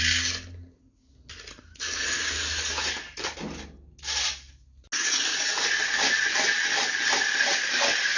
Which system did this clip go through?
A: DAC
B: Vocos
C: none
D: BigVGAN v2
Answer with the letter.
C